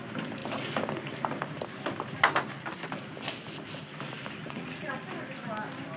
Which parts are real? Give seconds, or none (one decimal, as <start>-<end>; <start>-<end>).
0.0-4.4; 5.0-6.0